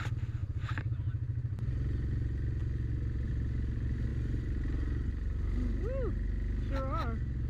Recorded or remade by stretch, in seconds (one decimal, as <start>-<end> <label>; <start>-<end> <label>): 0.0-7.5 recorded